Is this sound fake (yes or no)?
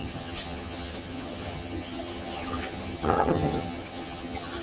yes